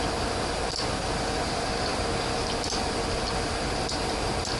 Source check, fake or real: real